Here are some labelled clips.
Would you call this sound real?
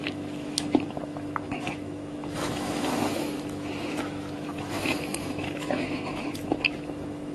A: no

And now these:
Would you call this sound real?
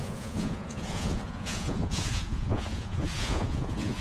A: no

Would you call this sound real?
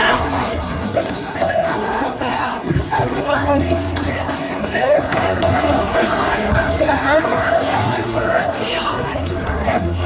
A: no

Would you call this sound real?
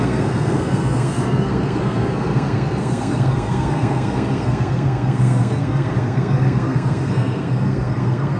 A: no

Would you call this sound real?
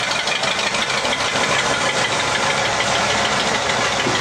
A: no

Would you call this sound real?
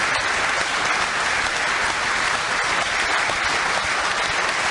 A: yes